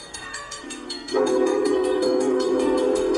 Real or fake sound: fake